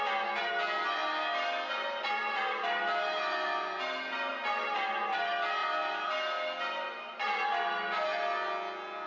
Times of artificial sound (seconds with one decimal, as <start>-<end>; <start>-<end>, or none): none